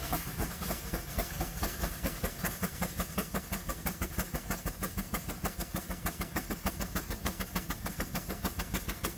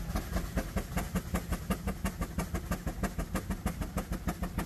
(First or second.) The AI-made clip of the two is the first